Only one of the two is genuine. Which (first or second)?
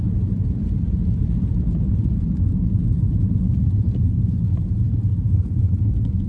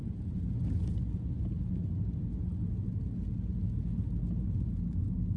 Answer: second